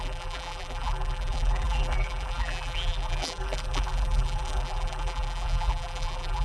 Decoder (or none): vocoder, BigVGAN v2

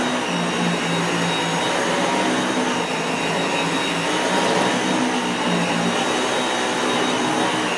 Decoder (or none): none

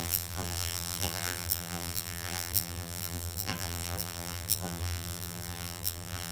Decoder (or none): vocoder, BigVGAN v2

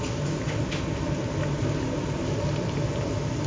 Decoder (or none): none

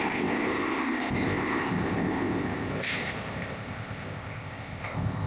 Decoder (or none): codec, ZipCodec